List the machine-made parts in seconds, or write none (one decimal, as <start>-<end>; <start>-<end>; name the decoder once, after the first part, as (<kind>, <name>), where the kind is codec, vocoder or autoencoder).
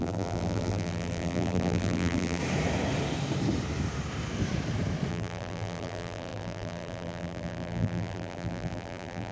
0.0-2.4 (vocoder, BigVGAN v2); 5.1-9.3